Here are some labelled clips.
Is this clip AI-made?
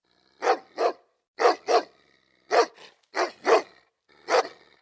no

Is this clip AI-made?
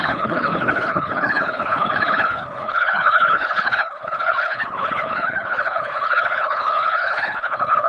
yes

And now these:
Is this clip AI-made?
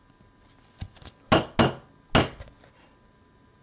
no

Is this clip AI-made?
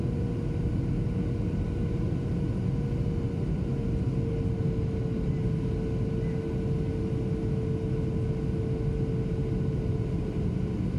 no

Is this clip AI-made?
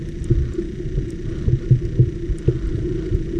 no